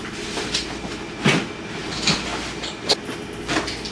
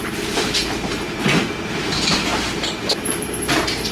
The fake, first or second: second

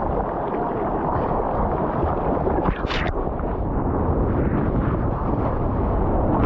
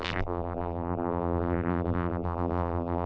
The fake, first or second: second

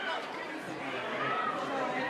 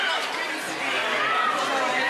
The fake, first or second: first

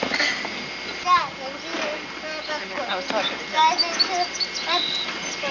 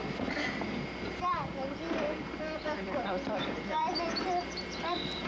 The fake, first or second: second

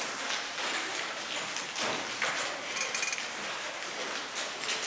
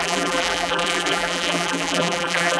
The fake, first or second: second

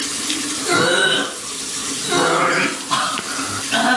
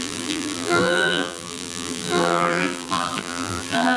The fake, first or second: second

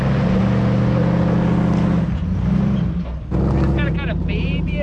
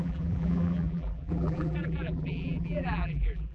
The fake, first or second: second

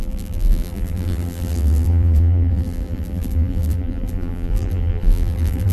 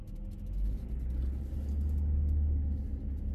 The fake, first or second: first